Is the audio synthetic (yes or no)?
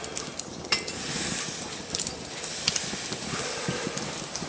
no